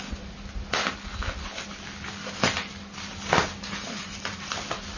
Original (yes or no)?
yes